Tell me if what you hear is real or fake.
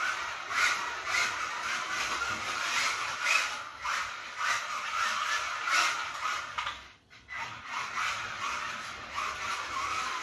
real